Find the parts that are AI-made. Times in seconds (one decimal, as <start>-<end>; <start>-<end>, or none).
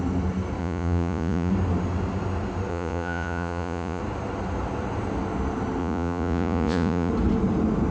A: 0.6-1.5; 2.7-4.0; 5.8-7.1